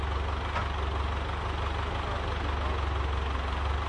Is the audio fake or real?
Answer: real